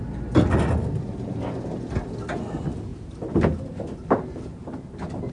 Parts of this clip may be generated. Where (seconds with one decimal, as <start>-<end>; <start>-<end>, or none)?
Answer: none

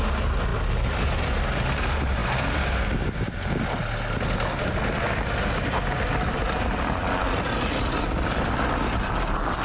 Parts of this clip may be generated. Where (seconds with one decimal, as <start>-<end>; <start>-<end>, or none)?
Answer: none

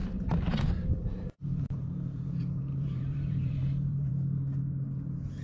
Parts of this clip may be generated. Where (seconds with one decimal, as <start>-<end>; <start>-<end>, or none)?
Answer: 0.0-0.5; 0.9-4.1